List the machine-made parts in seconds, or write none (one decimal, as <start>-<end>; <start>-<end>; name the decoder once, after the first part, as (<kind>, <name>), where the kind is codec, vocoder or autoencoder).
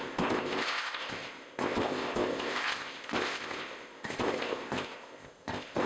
0.0-5.9 (codec, ZipCodec)